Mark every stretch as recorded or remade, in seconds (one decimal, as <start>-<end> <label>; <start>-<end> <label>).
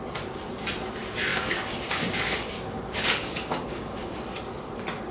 0.0-1.3 recorded; 1.3-4.2 remade; 4.2-5.1 recorded